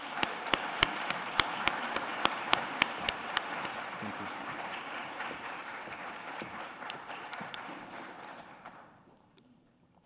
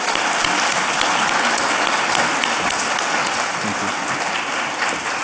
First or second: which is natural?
second